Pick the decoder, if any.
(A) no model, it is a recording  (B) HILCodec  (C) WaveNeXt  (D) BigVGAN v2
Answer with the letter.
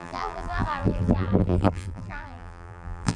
D